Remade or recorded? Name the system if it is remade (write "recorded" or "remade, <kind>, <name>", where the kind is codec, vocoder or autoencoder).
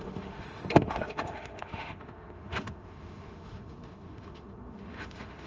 remade, autoencoder, DAC-VAE